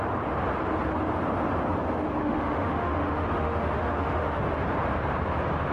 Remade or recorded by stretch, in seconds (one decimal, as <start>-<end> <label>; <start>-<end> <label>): 0.0-2.2 recorded; 2.2-4.4 remade; 4.4-5.7 recorded